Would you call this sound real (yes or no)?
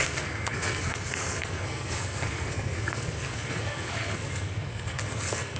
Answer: no